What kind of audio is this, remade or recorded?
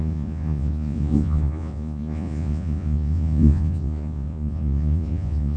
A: remade